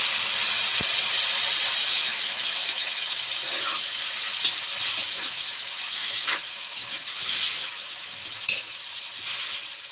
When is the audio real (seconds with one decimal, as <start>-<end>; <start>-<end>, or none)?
0.0-1.8; 3.2-5.1; 8.8-9.9